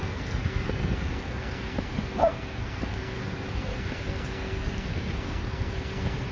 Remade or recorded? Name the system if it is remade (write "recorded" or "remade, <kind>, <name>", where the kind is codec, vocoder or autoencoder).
remade, codec, SNAC